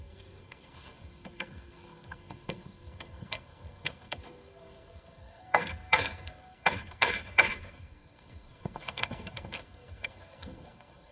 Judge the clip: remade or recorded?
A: remade